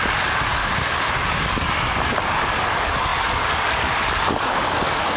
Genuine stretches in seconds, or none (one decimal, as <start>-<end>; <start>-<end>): 0.6-1.3